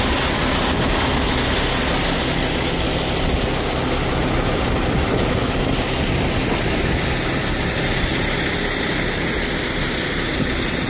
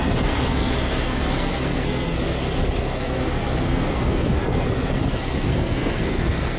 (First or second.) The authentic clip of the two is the first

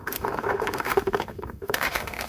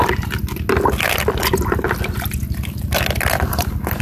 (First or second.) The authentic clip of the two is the second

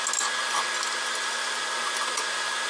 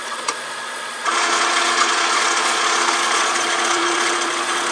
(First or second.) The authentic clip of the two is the first